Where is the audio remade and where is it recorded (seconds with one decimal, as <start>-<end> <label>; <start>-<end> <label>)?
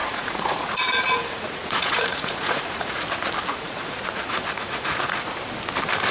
0.0-3.0 remade; 3.0-3.5 recorded; 3.5-5.4 remade; 5.4-6.1 recorded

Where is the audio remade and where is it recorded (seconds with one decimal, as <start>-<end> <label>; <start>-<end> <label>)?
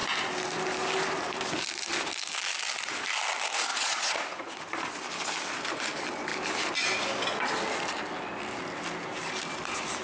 0.0-3.7 recorded; 3.7-4.6 remade; 4.6-10.0 recorded